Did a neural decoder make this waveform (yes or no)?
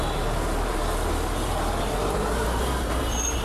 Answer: no